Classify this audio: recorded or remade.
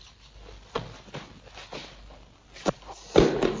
recorded